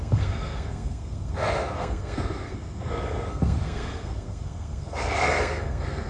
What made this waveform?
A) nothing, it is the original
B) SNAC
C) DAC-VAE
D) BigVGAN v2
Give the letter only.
B